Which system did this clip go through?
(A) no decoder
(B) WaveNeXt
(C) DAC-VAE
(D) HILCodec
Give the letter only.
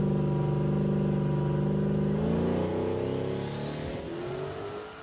A